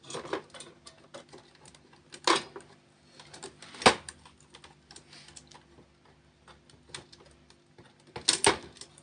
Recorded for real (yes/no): yes